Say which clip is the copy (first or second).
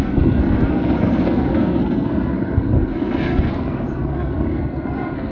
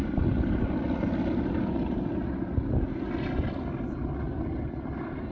first